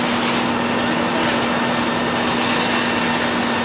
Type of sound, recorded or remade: recorded